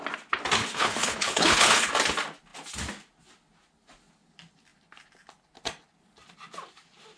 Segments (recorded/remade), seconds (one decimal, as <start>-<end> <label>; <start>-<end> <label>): 0.0-0.6 recorded; 0.6-1.9 remade; 1.9-7.2 recorded